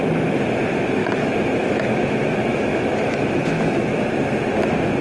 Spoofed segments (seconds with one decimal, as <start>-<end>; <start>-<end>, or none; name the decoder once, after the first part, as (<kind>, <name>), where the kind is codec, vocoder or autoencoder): 1.0-4.0 (autoencoder, DAC-VAE)